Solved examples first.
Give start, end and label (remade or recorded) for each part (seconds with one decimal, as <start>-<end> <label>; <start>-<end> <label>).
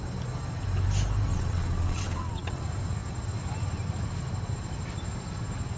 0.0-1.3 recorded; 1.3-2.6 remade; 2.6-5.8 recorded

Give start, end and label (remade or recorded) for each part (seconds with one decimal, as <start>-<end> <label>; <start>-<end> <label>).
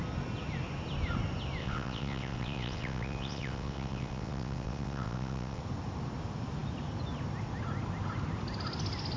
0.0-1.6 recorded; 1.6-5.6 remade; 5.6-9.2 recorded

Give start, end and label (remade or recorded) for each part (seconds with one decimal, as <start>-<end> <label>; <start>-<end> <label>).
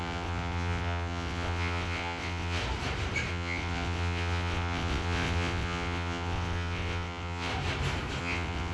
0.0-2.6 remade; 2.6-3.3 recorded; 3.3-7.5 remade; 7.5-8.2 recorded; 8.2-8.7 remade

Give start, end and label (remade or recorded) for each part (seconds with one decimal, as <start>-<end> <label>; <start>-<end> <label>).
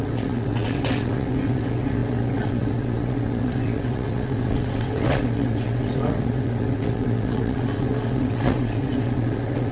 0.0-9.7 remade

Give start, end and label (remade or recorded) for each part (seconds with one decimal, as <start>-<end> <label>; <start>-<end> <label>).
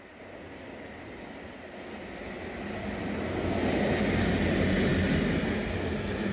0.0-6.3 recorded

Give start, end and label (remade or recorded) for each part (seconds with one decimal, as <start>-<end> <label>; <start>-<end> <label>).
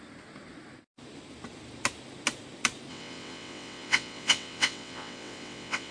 0.0-2.9 recorded; 2.9-5.9 remade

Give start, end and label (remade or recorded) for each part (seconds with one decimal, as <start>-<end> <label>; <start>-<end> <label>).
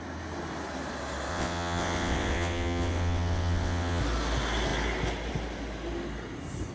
0.0-1.3 recorded; 1.3-4.0 remade; 4.0-6.7 recorded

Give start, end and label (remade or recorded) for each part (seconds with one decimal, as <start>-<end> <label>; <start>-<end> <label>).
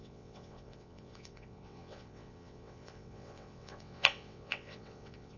0.0-5.4 remade